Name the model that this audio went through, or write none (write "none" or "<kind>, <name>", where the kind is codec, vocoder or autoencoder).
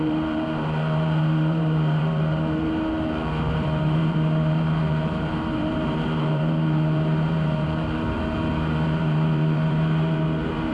vocoder, BigVGAN v2